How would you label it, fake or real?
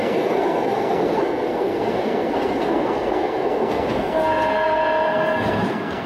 fake